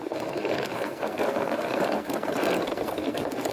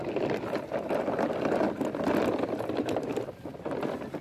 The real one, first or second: second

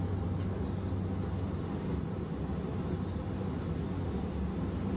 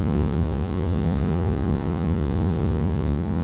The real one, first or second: first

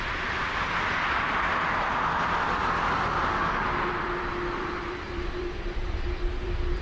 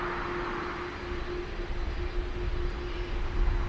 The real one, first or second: second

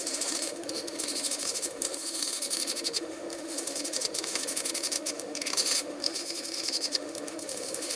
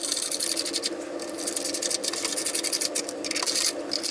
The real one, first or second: second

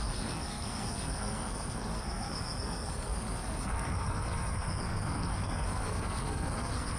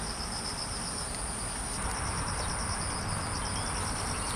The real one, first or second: second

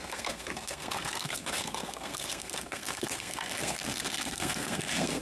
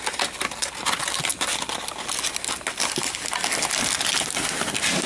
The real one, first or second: second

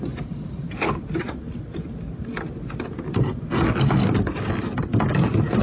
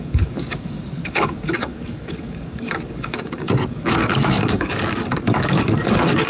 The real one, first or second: first